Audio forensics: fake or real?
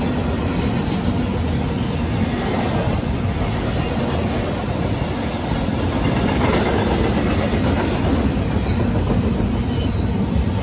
real